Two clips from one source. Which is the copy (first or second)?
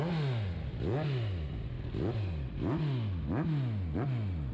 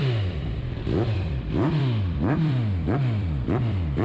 second